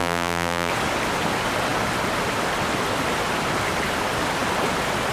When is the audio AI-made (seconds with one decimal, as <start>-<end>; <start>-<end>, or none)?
0.0-0.7